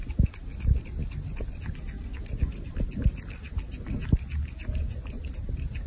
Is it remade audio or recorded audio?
recorded